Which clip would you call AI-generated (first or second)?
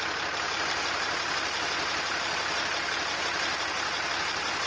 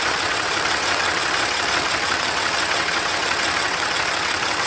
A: second